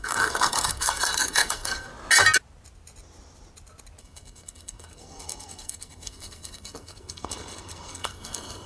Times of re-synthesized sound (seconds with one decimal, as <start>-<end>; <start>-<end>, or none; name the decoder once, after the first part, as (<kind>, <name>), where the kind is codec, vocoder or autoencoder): 0.0-1.9 (codec, SNAC); 4.0-8.7